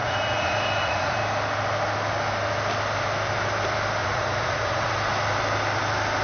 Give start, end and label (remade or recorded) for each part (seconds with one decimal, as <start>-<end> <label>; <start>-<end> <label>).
0.0-1.2 remade; 1.2-4.0 recorded; 4.0-4.9 remade; 4.9-6.2 recorded